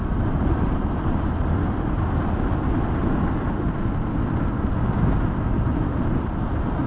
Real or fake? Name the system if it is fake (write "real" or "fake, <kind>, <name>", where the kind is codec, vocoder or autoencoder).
real